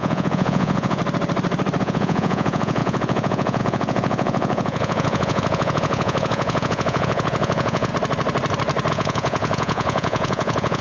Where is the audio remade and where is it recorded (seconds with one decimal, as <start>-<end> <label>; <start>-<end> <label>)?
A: 0.0-1.0 remade; 1.0-1.8 recorded; 1.8-7.9 remade; 7.9-8.9 recorded; 8.9-10.8 remade